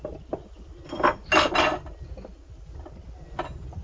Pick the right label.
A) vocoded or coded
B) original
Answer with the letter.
B